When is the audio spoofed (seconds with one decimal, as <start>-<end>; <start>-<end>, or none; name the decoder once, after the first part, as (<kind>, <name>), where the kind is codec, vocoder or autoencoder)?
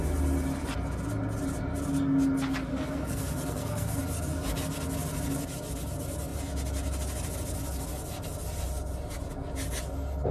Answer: 2.7-4.0 (codec, SNAC)